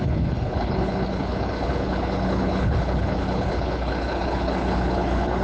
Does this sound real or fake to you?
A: fake